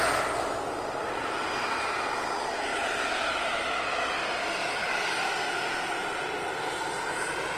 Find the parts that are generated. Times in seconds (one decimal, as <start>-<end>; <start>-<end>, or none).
4.6-5.2

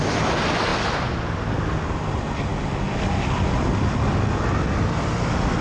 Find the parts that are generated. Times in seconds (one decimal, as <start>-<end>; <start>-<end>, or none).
none

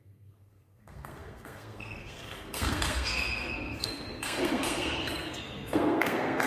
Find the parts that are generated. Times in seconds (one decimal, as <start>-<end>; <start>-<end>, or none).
0.0-6.5

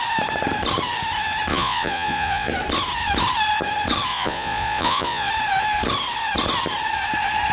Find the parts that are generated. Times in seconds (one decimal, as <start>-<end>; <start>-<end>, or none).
1.5-2.5; 4.1-5.3

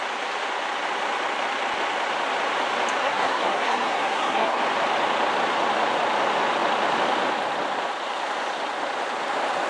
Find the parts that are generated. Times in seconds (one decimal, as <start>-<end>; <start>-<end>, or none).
3.0-4.6

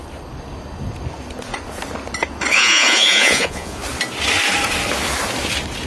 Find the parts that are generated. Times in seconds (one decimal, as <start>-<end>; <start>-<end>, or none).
2.5-3.8

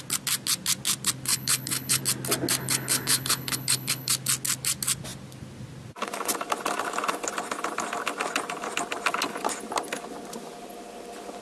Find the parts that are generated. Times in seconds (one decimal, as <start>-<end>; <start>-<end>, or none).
1.3-2.0; 2.6-4.1

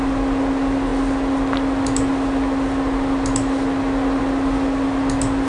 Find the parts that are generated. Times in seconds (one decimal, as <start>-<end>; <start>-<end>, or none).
none